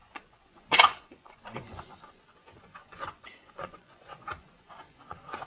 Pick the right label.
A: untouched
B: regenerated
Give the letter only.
B